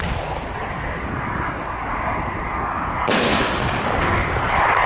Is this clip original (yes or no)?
yes